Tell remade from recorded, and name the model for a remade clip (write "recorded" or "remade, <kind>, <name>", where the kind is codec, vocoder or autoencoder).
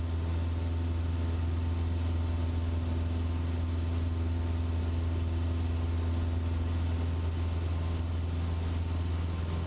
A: recorded